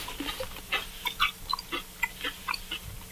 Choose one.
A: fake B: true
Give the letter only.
B